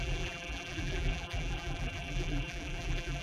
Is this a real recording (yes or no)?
no